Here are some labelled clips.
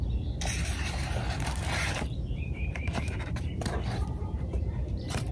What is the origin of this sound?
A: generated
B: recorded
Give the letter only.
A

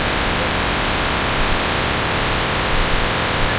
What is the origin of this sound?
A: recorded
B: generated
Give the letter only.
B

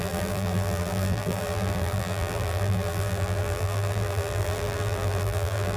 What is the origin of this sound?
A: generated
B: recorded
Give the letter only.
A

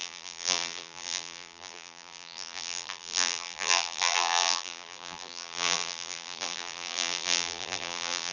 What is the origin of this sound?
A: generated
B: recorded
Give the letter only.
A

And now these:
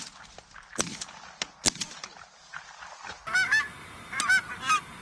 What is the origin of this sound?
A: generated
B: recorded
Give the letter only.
B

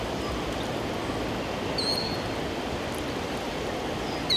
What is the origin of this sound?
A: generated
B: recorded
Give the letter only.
B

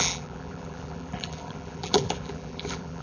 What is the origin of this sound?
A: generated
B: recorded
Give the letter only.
A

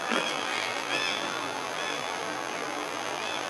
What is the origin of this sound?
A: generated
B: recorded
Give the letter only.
A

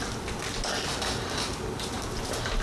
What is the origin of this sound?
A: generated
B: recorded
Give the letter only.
B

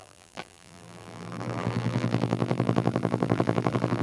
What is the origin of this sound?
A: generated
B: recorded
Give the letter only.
A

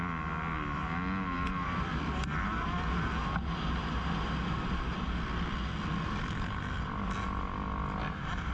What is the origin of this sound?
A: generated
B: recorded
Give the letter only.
B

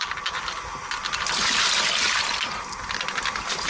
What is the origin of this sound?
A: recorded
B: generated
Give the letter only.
A